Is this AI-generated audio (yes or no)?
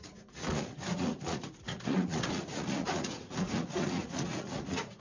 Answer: yes